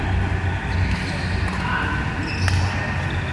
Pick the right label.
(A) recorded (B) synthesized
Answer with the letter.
A